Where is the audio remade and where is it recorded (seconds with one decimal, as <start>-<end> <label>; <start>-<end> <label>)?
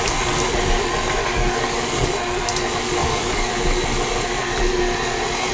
0.0-1.2 recorded; 1.2-2.1 remade; 2.1-3.0 recorded; 3.0-3.5 remade; 3.5-5.5 recorded